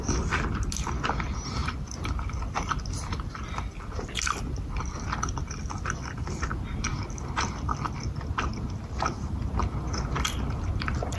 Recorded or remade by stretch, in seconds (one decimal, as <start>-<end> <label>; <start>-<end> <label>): 0.0-11.2 recorded